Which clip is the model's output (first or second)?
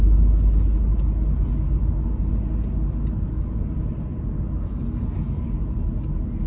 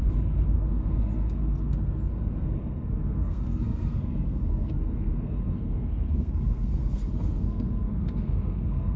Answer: second